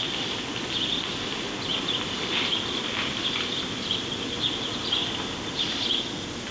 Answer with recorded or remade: recorded